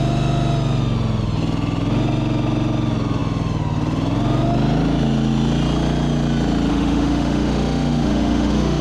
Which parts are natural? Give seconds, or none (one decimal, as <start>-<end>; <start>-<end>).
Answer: 0.0-6.7